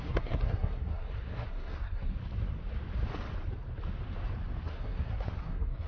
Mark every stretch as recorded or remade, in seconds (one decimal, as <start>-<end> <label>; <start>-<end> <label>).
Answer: 0.0-2.2 remade; 2.2-4.6 recorded; 4.6-5.9 remade